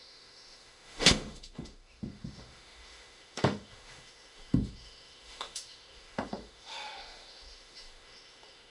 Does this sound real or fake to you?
fake